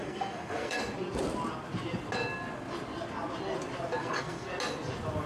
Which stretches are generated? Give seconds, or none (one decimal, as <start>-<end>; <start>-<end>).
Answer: 0.0-0.8; 4.0-4.5